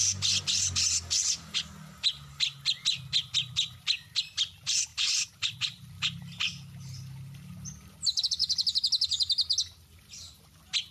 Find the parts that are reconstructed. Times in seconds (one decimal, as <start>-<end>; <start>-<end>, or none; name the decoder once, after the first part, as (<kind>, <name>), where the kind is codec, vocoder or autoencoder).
4.2-8.4 (vocoder, BigVGAN v2); 10.0-10.9